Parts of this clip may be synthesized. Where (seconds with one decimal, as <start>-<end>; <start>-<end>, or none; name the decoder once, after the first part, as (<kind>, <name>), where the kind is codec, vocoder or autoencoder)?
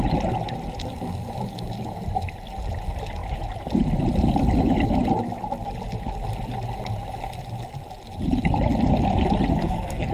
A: 9.5-10.1 (codec, SNAC)